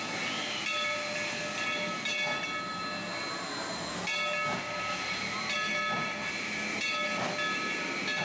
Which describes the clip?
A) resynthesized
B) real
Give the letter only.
B